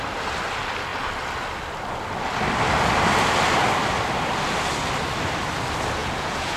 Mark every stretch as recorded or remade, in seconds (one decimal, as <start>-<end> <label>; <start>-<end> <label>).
0.0-6.0 recorded; 6.0-6.6 remade